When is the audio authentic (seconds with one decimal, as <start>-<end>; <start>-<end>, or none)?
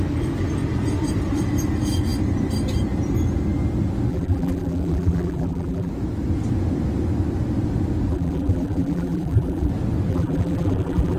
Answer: 0.0-4.1; 5.9-8.1; 9.7-10.1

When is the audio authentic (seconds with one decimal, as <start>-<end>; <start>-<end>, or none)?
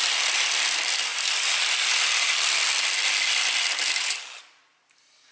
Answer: 0.0-5.3